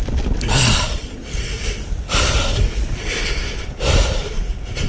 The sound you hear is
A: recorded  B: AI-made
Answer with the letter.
A